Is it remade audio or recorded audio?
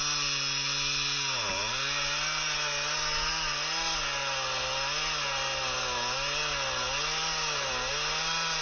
recorded